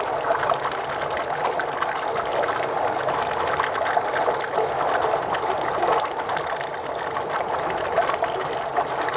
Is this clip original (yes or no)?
yes